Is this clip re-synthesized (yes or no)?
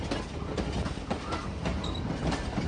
no